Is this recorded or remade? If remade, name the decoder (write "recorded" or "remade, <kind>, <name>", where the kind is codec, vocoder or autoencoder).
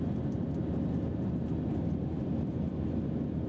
recorded